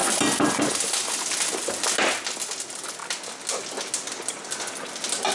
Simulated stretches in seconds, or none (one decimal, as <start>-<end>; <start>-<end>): none